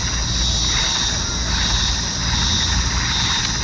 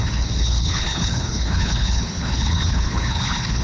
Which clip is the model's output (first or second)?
second